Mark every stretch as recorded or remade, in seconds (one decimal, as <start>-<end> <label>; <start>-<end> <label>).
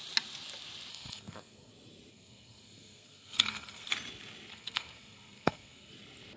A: 0.0-0.9 recorded; 0.9-1.7 remade; 1.7-2.1 recorded; 2.1-3.9 remade; 3.9-4.5 recorded; 4.5-5.9 remade; 5.9-6.4 recorded